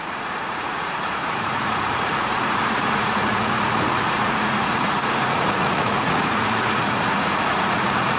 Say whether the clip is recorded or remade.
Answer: remade